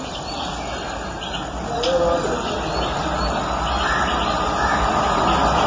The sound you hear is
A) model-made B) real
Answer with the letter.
B